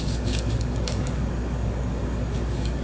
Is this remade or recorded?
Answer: remade